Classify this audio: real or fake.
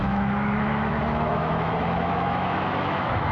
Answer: fake